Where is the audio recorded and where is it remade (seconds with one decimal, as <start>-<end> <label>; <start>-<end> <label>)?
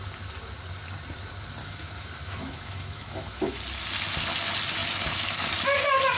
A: 0.0-1.6 recorded; 1.6-3.6 remade; 3.6-6.2 recorded